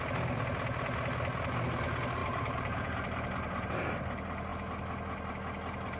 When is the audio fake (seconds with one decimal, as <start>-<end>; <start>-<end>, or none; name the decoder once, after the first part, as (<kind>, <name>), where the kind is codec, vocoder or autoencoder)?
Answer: 2.2-4.0 (vocoder, BigVGAN v2)